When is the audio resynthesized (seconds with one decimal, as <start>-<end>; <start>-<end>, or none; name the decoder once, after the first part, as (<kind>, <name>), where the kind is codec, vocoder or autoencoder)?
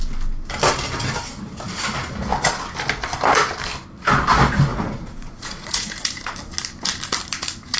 4.7-6.1 (vocoder, Vocos)